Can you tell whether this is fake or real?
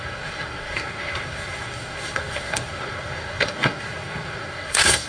fake